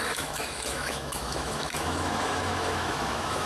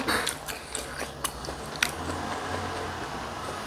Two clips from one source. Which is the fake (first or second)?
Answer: first